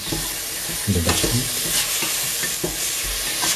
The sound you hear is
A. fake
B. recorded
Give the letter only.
B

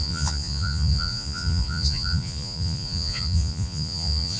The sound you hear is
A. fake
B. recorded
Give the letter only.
A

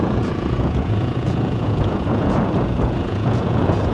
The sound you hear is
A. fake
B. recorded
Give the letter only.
A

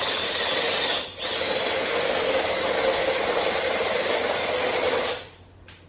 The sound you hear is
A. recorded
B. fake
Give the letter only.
A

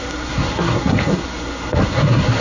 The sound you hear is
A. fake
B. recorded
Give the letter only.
A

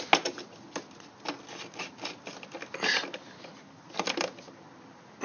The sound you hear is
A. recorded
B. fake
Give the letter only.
A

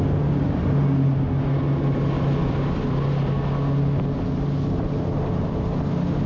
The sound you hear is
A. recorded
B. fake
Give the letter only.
A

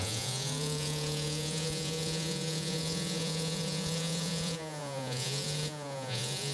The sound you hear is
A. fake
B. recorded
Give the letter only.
A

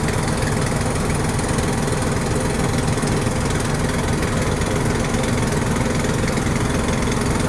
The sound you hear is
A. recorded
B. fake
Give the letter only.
A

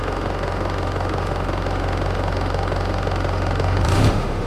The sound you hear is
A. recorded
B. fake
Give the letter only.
B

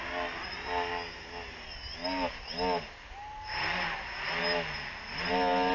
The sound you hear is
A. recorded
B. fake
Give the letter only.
A